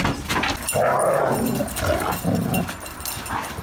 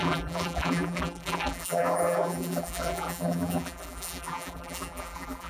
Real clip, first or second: first